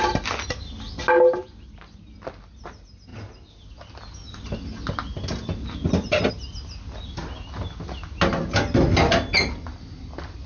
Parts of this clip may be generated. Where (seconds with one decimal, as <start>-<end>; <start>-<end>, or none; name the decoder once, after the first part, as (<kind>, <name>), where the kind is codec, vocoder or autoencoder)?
none